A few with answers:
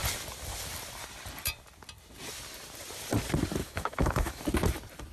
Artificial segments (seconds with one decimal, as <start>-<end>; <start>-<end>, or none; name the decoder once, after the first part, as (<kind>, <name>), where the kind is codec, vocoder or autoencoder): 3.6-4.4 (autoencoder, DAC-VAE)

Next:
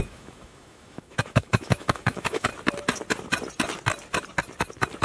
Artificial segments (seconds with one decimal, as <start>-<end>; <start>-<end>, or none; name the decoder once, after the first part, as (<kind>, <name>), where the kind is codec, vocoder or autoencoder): 0.0-2.5 (autoencoder, DAC-VAE)

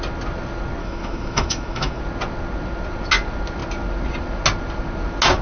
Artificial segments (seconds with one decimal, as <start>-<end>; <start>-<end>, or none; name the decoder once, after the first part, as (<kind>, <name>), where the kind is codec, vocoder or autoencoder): 0.8-2.0 (autoencoder, DAC-VAE)

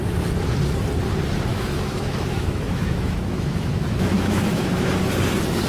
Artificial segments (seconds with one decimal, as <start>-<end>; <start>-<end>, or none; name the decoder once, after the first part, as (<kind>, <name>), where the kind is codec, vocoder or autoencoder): 1.5-4.9 (autoencoder, DAC-VAE)

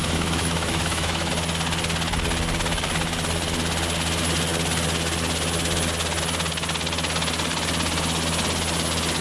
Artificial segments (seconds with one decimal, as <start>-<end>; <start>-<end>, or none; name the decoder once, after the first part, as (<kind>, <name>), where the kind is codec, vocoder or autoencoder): 0.0-1.3 (autoencoder, DAC-VAE)

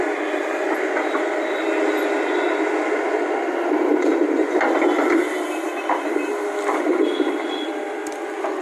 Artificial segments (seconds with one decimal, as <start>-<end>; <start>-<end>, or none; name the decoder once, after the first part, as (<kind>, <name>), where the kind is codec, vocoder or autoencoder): none